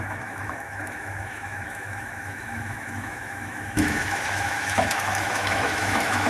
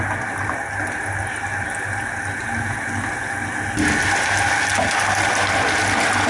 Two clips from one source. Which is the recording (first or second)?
second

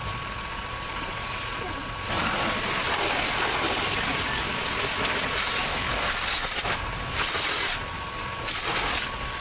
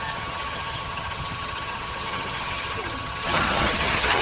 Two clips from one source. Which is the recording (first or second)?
first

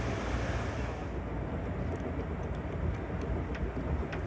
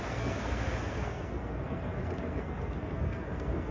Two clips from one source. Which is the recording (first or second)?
first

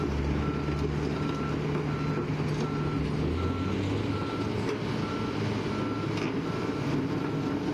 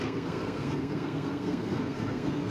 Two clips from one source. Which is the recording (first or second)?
first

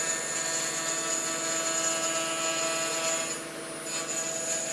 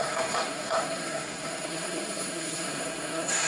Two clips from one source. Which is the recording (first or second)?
first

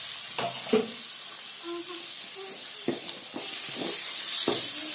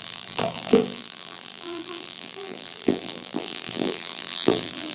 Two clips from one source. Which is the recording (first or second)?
first